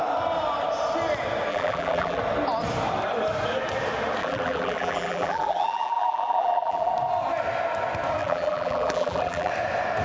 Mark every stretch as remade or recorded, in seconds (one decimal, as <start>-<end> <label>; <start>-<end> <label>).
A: 0.0-1.5 recorded; 1.5-2.2 remade; 2.2-4.2 recorded; 4.2-6.9 remade; 6.9-8.2 recorded; 8.2-9.5 remade; 9.5-10.0 recorded